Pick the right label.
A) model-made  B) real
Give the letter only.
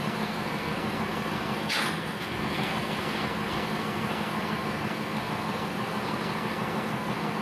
A